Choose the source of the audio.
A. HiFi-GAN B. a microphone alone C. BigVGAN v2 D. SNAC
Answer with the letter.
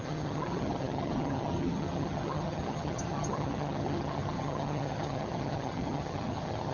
A